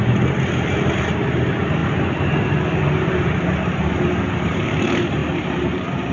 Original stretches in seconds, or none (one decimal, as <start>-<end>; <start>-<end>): none

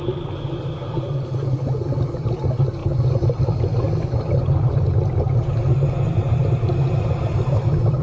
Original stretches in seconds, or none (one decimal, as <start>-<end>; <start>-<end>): 0.0-2.8; 3.6-8.0

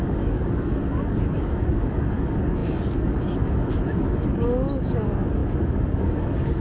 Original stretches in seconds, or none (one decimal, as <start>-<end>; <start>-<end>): none

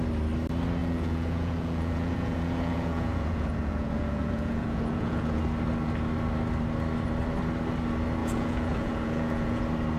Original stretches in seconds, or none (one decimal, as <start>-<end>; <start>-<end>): 0.0-0.8; 5.4-8.2; 9.6-10.0

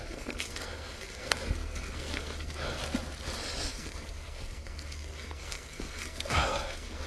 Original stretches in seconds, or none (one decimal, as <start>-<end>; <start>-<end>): 2.8-3.7

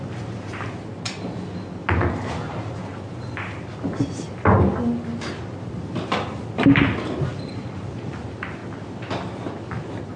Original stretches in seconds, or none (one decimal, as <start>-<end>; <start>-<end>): 0.0-10.2